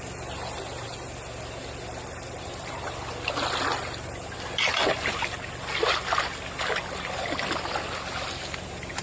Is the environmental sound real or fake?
real